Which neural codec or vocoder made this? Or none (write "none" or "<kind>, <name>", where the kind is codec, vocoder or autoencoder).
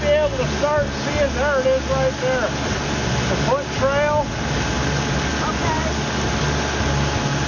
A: none